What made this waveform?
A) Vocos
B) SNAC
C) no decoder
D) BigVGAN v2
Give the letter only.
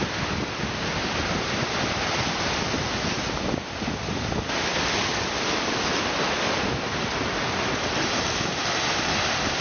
C